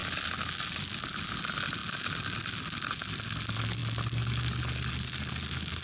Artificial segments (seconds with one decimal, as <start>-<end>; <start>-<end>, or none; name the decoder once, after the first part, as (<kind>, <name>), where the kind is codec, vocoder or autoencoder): none